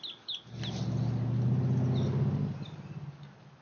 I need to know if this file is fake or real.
real